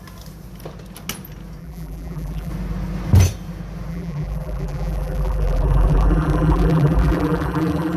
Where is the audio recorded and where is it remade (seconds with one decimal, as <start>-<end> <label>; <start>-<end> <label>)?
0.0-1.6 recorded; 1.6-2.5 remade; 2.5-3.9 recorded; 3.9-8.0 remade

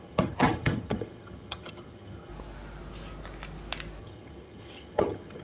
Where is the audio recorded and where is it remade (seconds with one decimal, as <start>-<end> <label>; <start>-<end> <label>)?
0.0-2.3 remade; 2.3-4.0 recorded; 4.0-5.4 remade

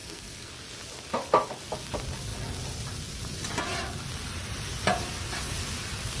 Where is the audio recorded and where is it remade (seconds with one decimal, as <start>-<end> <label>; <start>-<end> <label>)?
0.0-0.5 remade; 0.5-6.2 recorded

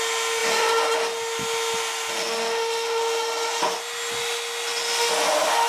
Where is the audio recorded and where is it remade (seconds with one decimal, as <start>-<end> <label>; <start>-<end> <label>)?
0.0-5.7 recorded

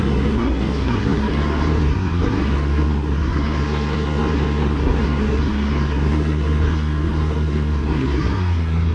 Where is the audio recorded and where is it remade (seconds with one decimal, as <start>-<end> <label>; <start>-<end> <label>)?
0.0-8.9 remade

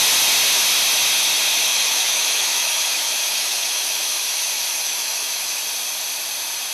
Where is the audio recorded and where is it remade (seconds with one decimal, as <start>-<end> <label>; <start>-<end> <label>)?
0.0-1.7 recorded; 1.7-5.6 remade; 5.6-6.7 recorded

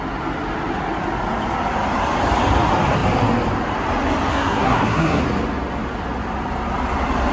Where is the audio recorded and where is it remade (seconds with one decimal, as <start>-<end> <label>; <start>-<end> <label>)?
0.0-4.3 recorded; 4.3-5.2 remade; 5.2-7.3 recorded

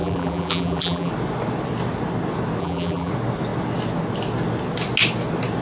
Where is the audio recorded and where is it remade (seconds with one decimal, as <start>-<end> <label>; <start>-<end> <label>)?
0.0-1.1 remade; 1.1-2.6 recorded; 2.6-3.1 remade; 3.1-5.6 recorded